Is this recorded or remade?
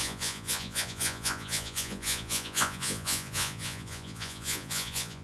remade